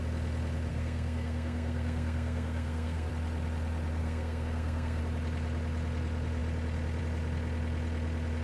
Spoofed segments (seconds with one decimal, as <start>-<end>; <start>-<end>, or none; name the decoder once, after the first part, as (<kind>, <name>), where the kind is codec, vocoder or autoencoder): 0.7-3.1 (codec, SNAC); 4.0-5.0